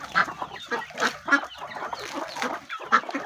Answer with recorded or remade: recorded